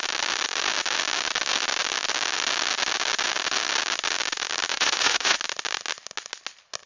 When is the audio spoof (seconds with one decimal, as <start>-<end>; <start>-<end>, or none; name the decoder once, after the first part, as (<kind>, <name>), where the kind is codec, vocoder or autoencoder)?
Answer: 4.7-5.4 (vocoder, Vocos)